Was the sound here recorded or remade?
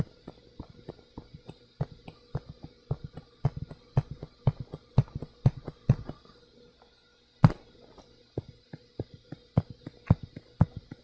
recorded